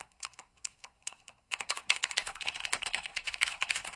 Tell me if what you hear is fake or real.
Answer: fake